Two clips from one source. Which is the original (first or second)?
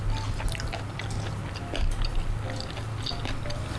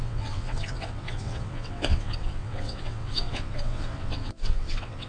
first